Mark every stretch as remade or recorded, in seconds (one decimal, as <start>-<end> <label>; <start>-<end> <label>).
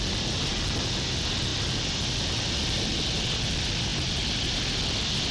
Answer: 0.0-5.3 recorded